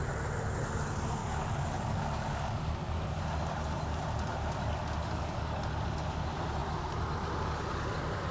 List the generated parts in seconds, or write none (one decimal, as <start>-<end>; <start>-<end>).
1.2-3.2; 5.0-5.7